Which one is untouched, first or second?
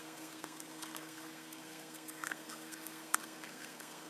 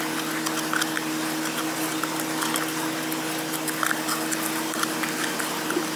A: second